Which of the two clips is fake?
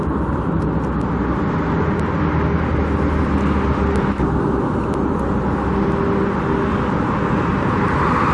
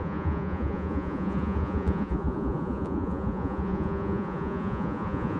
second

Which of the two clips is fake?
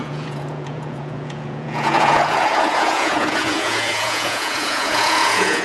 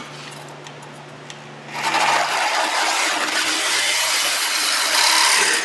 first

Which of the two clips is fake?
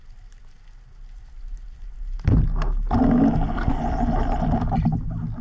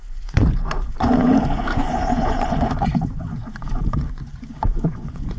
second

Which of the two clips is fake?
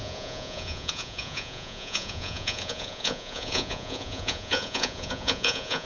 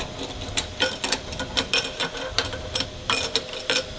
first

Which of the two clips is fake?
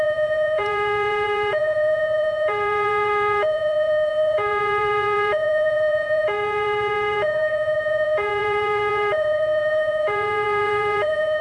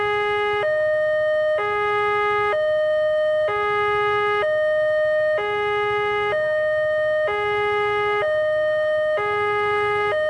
first